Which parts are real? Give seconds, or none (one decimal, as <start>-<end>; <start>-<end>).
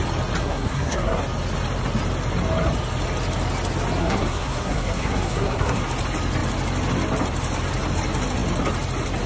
0.0-0.4; 1.2-4.0; 5.8-9.3